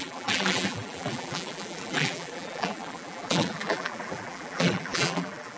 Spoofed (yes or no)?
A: yes